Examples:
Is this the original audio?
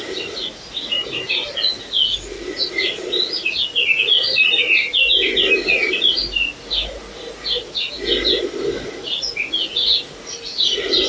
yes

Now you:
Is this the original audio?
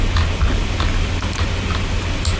yes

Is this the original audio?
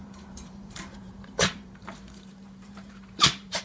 no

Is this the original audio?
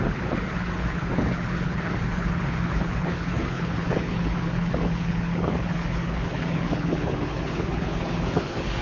no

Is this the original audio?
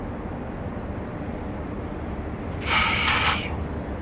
yes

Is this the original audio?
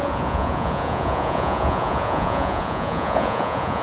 no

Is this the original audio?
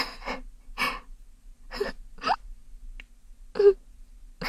yes